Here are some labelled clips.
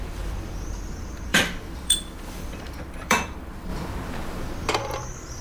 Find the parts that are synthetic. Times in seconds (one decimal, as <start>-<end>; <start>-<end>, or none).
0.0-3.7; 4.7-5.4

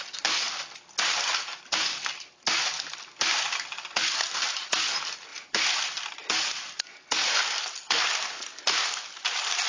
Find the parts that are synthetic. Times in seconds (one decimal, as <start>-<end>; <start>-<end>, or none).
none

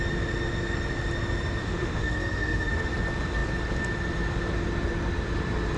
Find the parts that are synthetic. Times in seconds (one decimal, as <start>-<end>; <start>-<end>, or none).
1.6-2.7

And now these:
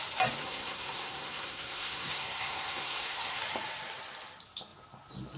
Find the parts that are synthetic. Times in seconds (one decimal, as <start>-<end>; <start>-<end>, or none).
0.4-3.4